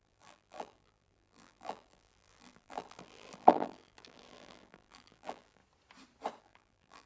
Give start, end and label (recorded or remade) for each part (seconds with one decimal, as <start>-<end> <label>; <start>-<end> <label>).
0.0-5.6 remade; 5.6-6.4 recorded; 6.4-7.1 remade